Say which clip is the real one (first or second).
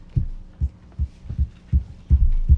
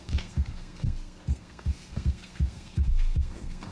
first